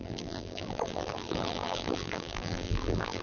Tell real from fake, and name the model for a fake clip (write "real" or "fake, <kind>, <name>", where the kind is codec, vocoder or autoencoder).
fake, vocoder, BigVGAN v2